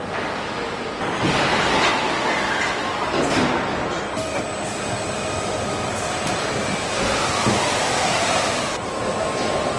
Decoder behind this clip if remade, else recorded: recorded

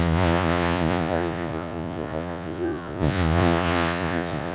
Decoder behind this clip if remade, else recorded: remade, vocoder, Vocos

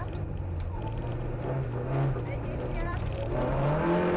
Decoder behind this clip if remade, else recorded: recorded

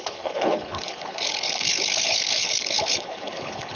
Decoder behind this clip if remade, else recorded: remade, codec, HILCodec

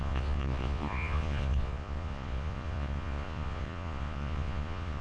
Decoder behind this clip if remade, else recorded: remade, vocoder, Vocos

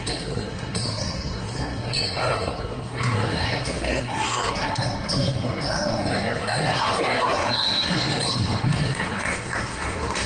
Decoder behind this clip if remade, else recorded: remade, codec, SNAC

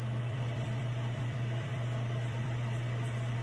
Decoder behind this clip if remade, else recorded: remade, vocoder, BigVGAN v2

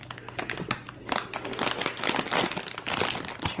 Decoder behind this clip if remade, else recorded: recorded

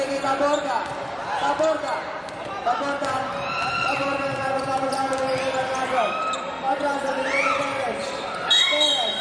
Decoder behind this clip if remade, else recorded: recorded